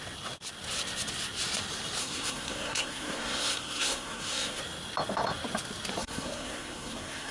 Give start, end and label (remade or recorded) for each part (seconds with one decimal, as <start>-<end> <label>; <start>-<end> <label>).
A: 0.0-2.0 recorded; 2.0-4.6 remade; 4.6-6.0 recorded; 6.0-7.3 remade